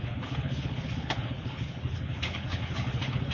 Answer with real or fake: fake